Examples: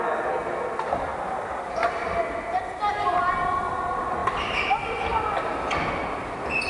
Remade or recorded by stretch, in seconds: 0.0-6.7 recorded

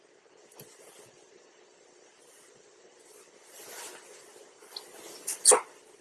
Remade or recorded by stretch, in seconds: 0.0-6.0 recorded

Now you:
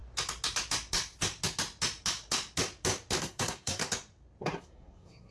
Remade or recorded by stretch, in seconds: 0.0-3.2 recorded; 3.2-3.8 remade; 3.8-4.4 recorded; 4.4-5.3 remade